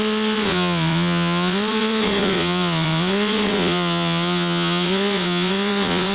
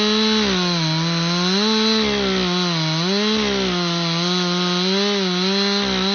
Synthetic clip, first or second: first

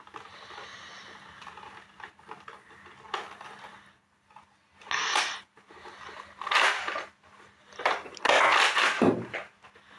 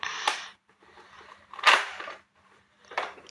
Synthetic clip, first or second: second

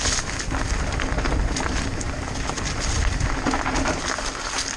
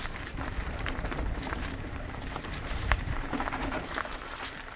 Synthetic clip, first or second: second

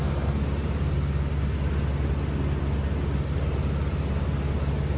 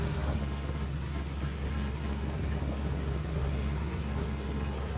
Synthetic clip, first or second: second